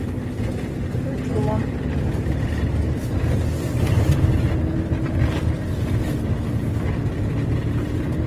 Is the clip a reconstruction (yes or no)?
no